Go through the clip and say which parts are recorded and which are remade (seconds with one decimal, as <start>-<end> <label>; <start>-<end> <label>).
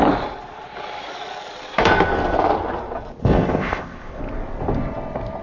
0.0-3.2 recorded; 3.2-4.2 remade; 4.2-5.4 recorded